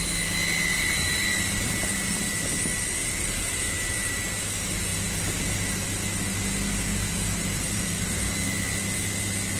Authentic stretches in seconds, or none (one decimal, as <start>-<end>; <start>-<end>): 0.0-0.7; 1.9-3.0; 4.1-6.9; 8.3-9.6

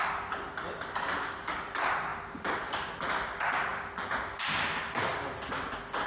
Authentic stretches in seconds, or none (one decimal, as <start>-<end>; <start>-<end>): 0.0-2.1; 2.9-6.1

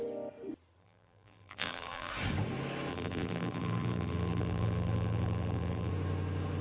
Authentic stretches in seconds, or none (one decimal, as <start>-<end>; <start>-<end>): 0.0-0.8; 2.1-2.9; 5.9-6.6

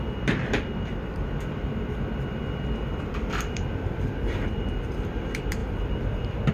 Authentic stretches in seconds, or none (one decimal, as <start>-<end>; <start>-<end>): none

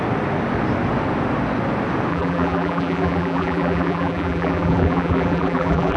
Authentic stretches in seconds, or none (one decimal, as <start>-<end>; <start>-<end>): 0.0-2.1

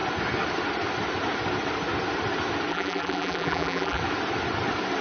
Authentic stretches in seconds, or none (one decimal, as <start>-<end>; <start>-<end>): 0.0-2.7; 4.0-5.0

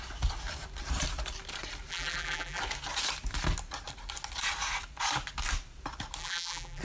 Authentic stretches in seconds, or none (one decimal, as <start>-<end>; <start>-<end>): 0.0-1.9; 2.6-6.2

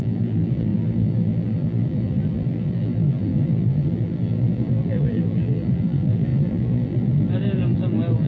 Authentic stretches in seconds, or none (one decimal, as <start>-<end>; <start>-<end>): none